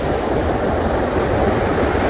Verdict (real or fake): real